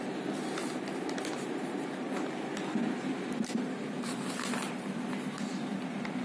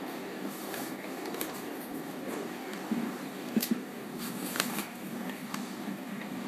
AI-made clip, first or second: second